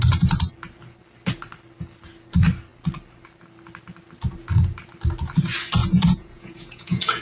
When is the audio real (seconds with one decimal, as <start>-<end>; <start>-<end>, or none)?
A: 0.0-5.8